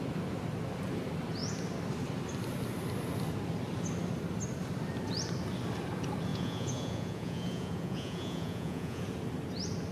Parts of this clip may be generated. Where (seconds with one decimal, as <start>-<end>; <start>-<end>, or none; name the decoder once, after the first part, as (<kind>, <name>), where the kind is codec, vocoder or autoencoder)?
6.3-9.0 (vocoder, Vocos)